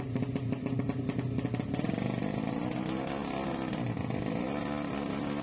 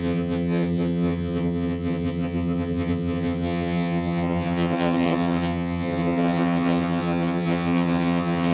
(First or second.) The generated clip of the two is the second